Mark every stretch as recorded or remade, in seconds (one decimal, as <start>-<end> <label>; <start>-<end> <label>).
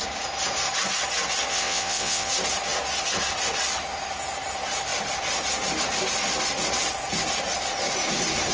0.0-1.5 recorded; 1.5-2.3 remade; 2.3-8.5 recorded